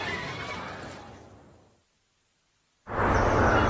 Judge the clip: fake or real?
real